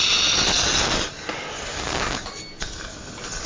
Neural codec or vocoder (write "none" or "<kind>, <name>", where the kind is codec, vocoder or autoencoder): none